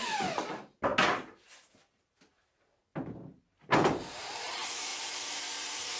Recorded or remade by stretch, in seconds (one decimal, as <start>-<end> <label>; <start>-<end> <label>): 0.0-6.0 remade